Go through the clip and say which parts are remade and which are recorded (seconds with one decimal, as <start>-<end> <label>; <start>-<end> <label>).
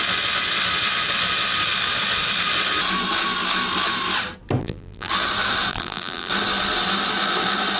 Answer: 0.0-4.6 recorded; 4.6-5.1 remade; 5.1-5.7 recorded; 5.7-6.3 remade; 6.3-7.8 recorded